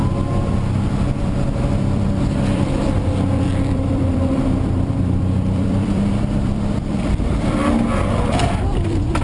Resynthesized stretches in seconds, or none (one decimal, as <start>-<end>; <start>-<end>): 1.2-7.6; 8.3-9.2